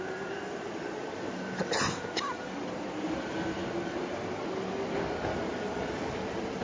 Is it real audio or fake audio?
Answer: fake